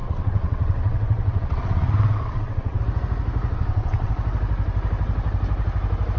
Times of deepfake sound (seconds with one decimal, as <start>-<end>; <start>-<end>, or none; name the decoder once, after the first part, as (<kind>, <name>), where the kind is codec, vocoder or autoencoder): 0.0-2.8 (vocoder, WaveNeXt); 3.5-4.1